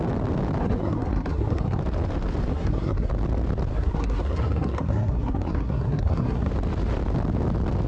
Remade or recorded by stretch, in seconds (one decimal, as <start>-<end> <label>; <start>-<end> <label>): 0.0-0.6 recorded; 0.6-1.8 remade; 1.8-2.5 recorded; 2.5-3.1 remade; 3.1-3.7 recorded; 3.7-6.5 remade; 6.5-7.9 recorded